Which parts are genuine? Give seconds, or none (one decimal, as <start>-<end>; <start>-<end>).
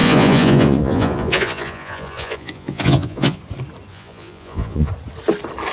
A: 3.4-3.9; 4.9-5.7